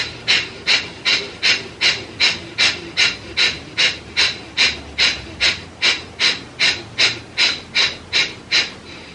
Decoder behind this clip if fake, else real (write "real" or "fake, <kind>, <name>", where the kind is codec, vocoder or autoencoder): real